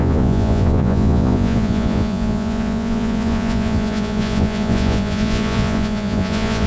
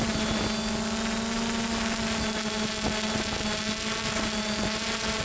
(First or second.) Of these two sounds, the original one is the second